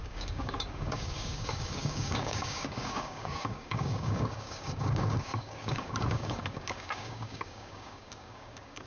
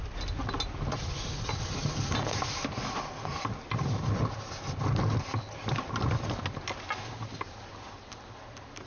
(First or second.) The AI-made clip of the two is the first